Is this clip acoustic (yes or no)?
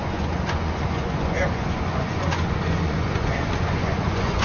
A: no